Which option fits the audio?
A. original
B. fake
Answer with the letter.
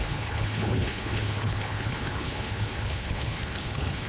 B